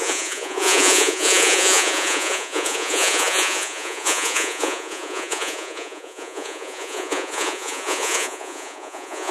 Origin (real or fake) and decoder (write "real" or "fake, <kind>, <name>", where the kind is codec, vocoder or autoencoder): fake, vocoder, Vocos